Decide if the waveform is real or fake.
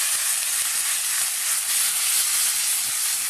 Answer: real